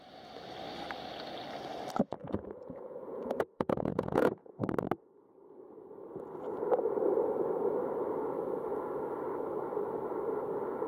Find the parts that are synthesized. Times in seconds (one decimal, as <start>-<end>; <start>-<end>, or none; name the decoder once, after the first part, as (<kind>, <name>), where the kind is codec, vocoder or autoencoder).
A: 2.2-4.6 (vocoder, Vocos)